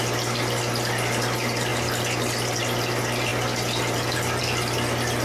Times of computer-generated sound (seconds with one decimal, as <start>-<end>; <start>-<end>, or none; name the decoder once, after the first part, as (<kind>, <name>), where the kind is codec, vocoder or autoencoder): none